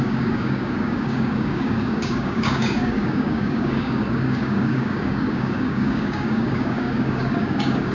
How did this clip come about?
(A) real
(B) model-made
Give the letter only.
B